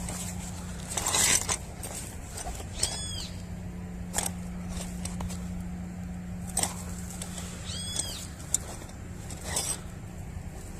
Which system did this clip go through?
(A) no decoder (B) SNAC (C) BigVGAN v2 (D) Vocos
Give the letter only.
A